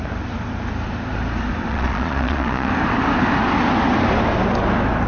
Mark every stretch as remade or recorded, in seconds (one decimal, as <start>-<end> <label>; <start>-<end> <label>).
0.0-1.7 recorded; 1.7-2.7 remade; 2.7-5.1 recorded